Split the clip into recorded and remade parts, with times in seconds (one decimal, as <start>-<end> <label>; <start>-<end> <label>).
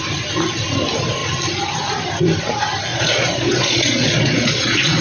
0.0-2.9 recorded; 2.9-5.0 remade